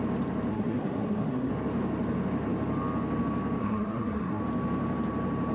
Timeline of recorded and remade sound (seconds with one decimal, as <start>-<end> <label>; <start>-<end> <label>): 0.0-0.5 recorded; 0.5-1.5 remade; 1.5-3.6 recorded; 3.6-4.4 remade; 4.4-5.5 recorded